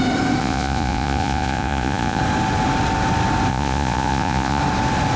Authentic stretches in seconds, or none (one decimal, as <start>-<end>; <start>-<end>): 0.0-0.4; 2.2-3.5; 4.6-5.2